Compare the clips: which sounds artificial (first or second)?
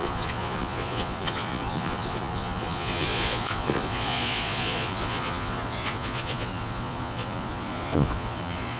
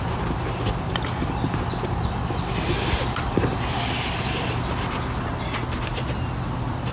first